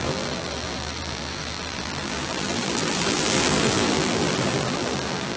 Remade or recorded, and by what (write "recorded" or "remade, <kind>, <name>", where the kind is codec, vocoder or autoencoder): remade, vocoder, BigVGAN v2